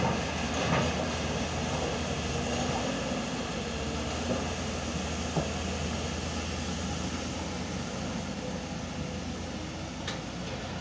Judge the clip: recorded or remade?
recorded